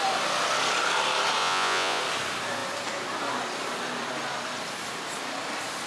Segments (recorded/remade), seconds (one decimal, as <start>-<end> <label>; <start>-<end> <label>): 0.0-1.4 recorded; 1.4-2.0 remade; 2.0-5.9 recorded